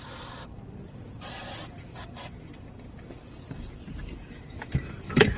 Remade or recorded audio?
remade